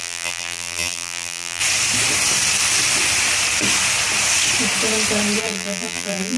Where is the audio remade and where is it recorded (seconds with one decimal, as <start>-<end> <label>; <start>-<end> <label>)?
0.0-1.6 remade; 1.6-5.4 recorded; 5.4-6.4 remade

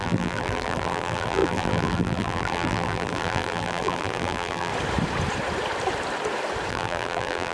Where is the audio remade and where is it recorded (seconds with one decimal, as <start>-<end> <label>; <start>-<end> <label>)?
0.0-4.7 remade; 4.7-6.7 recorded; 6.7-7.5 remade

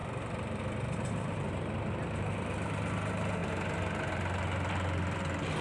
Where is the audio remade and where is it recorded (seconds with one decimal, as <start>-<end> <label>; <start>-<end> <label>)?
0.0-2.8 remade; 2.8-5.6 recorded

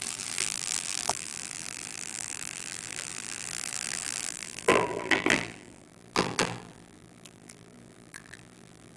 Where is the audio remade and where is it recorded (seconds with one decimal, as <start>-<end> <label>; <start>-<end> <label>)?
0.0-9.0 remade

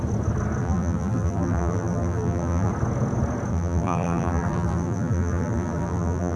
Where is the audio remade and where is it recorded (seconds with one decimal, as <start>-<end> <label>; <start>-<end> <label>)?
0.0-0.6 recorded; 0.6-2.7 remade; 2.7-3.5 recorded; 3.5-6.4 remade

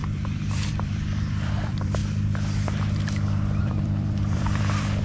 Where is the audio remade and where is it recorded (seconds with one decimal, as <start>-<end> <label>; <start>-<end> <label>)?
0.0-2.0 remade; 2.0-3.6 recorded; 3.6-5.0 remade

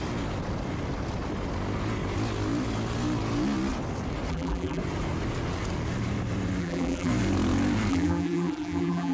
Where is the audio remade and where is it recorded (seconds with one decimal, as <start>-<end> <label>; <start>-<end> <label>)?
0.0-4.3 recorded; 4.3-4.8 remade; 4.8-6.6 recorded; 6.6-7.1 remade; 7.1-7.9 recorded; 7.9-9.1 remade